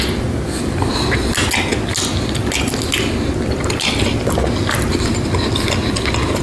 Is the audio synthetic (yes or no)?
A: no